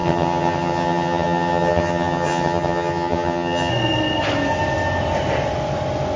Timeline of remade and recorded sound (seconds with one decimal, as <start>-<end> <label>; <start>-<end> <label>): 0.0-3.7 remade; 3.7-6.2 recorded